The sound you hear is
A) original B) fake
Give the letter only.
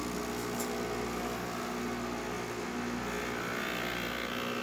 A